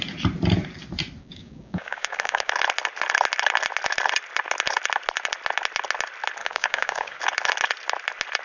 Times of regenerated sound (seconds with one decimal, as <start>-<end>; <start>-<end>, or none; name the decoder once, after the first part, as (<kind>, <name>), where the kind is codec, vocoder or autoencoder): 1.2-2.5 (codec, DAC); 6.4-7.2

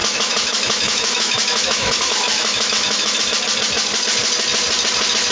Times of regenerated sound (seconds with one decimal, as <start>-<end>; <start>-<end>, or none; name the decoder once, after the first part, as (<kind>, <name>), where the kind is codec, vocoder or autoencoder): 0.0-3.2 (autoencoder, DAC-VAE)